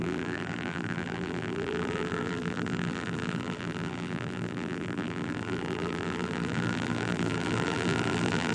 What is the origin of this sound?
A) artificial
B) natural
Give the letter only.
A